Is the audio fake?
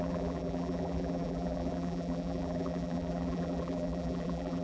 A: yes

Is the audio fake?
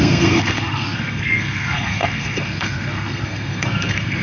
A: yes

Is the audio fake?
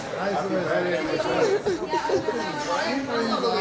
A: no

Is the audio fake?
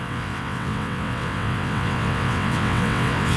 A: yes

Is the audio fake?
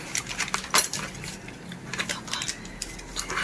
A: no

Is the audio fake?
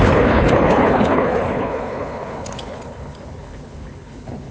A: yes